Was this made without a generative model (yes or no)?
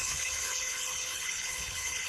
no